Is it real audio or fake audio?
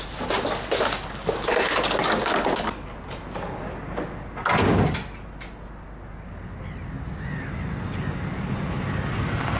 real